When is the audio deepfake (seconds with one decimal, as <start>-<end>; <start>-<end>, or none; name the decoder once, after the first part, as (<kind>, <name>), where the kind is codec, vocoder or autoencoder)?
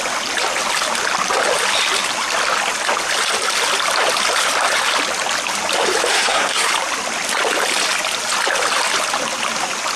6.1-6.7 (codec, SNAC)